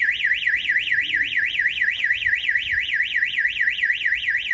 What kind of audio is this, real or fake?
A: fake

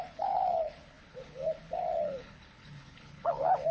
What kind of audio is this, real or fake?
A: fake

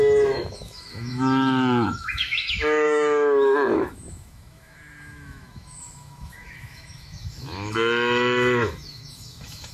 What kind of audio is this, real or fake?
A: fake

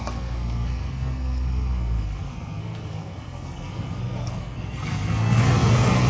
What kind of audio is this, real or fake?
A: fake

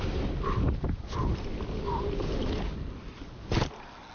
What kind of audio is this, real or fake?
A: real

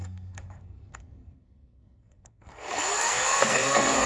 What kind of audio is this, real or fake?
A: fake